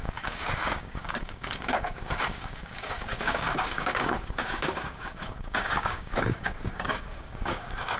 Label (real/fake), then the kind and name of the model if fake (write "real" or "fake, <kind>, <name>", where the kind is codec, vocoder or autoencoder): fake, codec, DAC